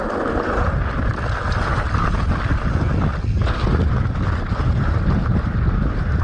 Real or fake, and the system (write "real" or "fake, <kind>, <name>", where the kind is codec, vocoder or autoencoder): real